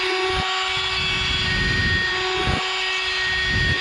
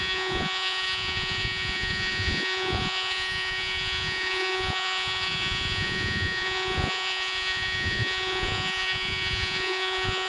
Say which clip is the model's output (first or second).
second